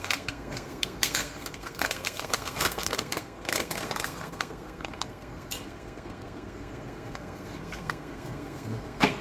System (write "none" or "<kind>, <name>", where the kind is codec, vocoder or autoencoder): codec, SNAC